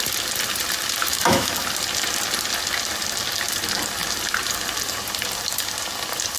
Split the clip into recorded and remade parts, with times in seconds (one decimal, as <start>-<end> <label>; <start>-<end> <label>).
0.0-1.0 recorded; 1.0-1.5 remade; 1.5-6.4 recorded